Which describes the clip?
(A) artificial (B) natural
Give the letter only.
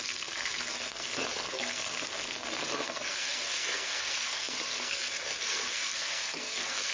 A